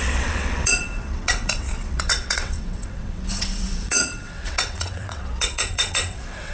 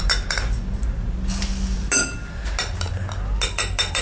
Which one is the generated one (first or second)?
first